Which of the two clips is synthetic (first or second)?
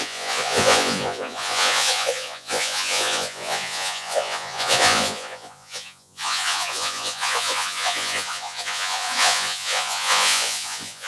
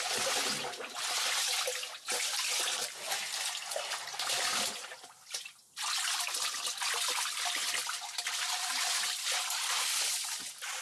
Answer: first